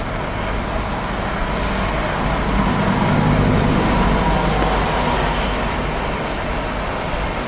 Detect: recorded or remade recorded